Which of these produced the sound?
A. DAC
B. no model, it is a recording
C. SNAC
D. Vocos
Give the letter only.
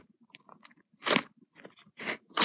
B